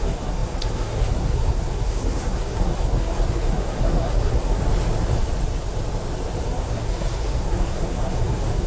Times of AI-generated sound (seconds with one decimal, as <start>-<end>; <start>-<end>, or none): 0.0-4.6; 6.4-8.7